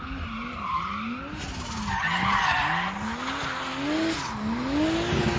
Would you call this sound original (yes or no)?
yes